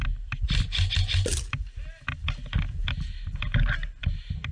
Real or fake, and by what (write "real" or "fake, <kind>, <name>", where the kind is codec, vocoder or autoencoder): real